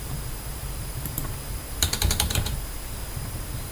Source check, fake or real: fake